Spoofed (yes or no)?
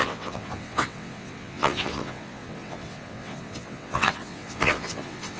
yes